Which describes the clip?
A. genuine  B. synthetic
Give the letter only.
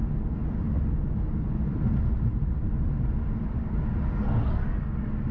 A